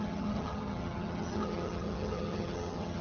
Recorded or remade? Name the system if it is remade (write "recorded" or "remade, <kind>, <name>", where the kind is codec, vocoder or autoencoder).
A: remade, vocoder, HiFi-GAN